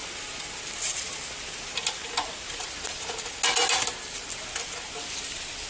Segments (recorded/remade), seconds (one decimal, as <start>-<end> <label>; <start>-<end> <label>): 0.0-5.7 recorded